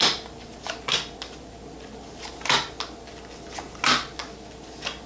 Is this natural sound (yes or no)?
yes